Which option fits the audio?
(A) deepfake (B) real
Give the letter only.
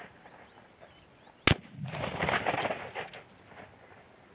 B